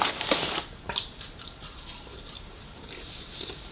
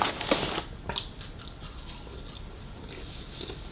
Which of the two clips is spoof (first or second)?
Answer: first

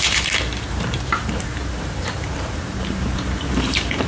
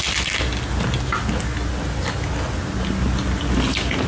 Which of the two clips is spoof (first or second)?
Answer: first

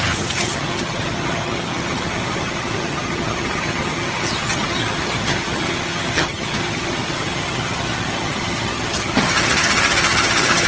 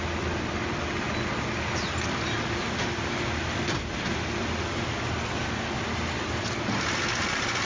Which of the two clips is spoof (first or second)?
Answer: first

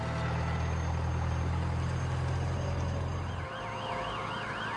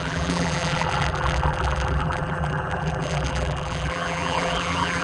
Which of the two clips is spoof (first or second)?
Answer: second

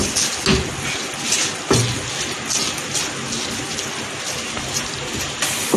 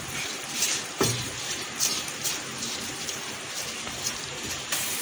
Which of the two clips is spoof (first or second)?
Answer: second